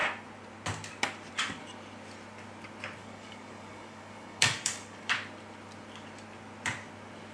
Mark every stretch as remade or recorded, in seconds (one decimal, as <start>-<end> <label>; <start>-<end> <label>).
0.0-3.0 recorded; 3.0-5.1 remade; 5.1-7.3 recorded